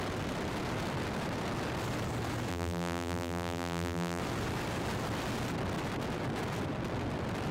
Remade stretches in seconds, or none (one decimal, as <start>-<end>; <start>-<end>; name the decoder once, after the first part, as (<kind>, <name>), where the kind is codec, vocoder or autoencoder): 2.5-4.2 (vocoder, BigVGAN v2)